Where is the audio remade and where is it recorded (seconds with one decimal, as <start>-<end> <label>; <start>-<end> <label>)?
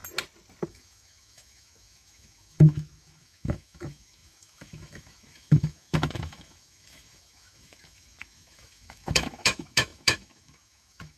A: 0.0-0.7 recorded; 0.7-11.2 remade